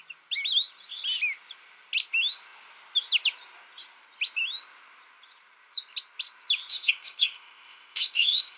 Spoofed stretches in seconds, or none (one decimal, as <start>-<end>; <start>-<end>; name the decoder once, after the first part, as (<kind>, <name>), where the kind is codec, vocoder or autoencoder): 6.7-8.6 (codec, ZipCodec)